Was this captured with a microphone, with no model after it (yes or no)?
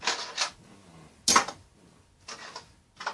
yes